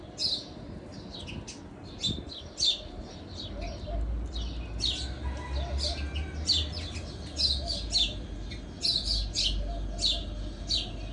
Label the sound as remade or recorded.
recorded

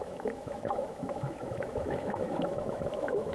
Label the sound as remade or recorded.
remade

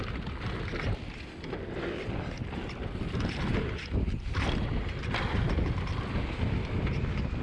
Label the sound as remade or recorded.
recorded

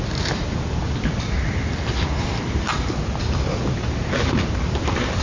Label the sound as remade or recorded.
recorded